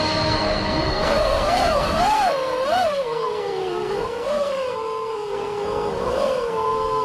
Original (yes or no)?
no